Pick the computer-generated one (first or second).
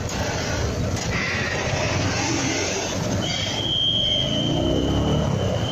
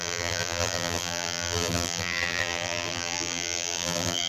second